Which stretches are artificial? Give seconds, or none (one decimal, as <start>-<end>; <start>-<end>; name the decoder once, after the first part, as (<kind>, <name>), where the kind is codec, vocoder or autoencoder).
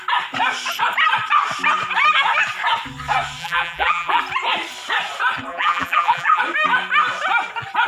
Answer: 3.4-4.2 (vocoder, BigVGAN v2); 5.5-6.4